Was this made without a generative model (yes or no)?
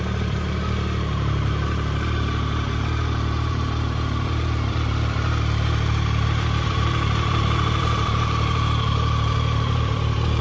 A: no